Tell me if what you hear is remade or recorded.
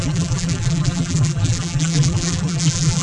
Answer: remade